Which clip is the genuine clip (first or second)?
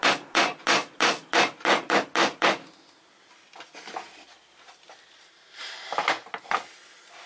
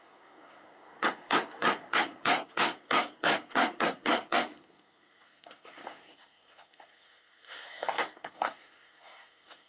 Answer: first